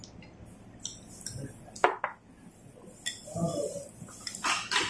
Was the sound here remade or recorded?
recorded